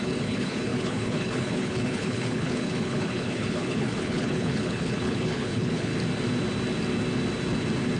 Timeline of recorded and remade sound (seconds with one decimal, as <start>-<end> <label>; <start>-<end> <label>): 0.0-5.9 remade; 5.9-8.0 recorded

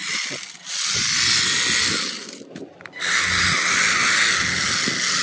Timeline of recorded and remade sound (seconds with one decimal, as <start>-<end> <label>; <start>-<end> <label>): 0.0-5.2 recorded

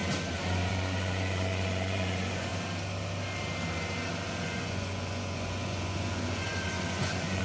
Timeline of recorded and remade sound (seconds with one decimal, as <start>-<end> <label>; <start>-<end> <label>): 0.0-0.7 recorded; 0.7-2.5 remade; 2.5-4.4 recorded; 4.4-7.4 remade